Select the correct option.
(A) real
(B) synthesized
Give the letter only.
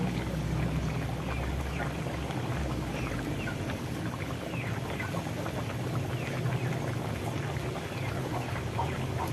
A